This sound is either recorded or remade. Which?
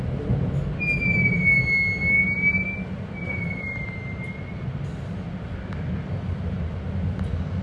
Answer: recorded